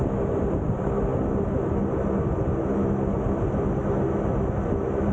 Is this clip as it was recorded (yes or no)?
yes